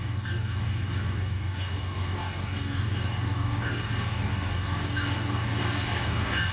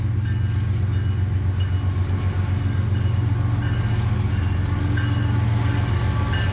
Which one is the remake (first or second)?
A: first